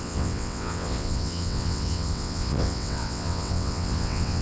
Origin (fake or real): fake